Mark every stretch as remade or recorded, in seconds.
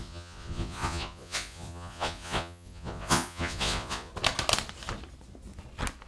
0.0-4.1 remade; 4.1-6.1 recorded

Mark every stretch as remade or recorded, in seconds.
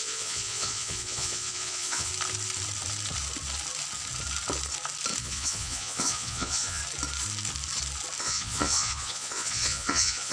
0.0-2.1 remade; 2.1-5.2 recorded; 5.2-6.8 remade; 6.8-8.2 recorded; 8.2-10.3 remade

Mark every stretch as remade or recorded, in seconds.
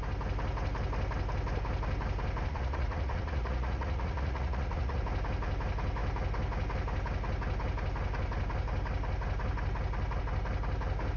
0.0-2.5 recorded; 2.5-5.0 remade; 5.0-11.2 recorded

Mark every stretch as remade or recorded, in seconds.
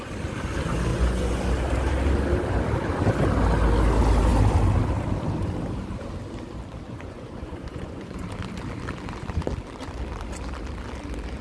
0.0-0.9 recorded; 0.9-1.4 remade; 1.4-6.9 recorded; 6.9-8.2 remade; 8.2-11.4 recorded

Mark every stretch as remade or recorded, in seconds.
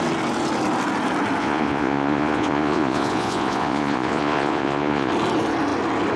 0.0-1.4 recorded; 1.4-5.1 remade; 5.1-6.2 recorded